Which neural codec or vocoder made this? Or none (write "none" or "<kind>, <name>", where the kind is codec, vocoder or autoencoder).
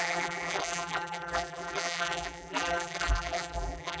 vocoder, BigVGAN v2